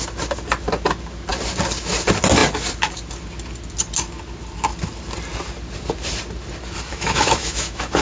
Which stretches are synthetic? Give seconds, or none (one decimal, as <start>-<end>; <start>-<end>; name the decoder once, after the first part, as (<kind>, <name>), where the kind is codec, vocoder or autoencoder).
6.9-8.0 (autoencoder, DAC-VAE)